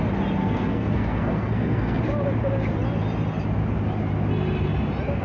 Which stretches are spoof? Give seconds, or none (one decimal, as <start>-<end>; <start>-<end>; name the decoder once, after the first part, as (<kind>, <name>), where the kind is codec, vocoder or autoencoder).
0.4-2.0 (codec, SNAC)

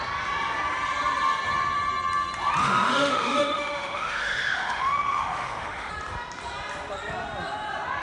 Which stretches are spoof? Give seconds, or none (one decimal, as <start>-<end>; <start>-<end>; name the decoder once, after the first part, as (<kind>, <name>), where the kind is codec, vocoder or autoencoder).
2.6-5.9 (autoencoder, DAC-VAE)

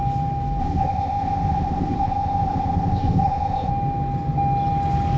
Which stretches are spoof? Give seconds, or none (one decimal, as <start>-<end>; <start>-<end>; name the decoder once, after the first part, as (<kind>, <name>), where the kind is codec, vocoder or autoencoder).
0.6-3.7 (codec, ZipCodec)